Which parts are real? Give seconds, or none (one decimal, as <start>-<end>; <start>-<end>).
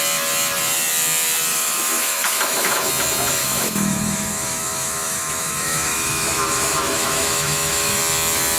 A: 0.0-1.5; 2.9-3.4; 8.0-8.6